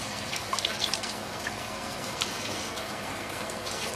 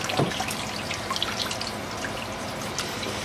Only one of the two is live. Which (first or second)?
second